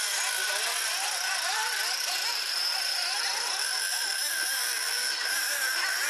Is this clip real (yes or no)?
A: yes